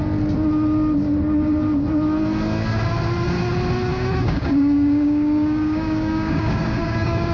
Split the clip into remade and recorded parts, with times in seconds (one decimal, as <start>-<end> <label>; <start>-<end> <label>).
0.0-3.9 recorded; 3.9-7.3 remade